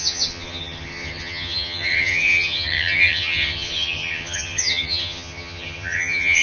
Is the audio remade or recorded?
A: remade